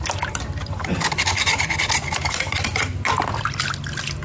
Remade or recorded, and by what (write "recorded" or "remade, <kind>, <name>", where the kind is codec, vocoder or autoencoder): recorded